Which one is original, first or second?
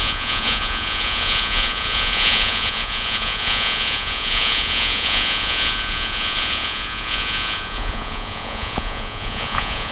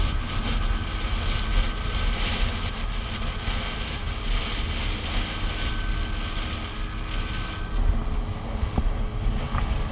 second